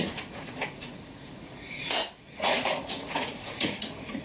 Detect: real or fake fake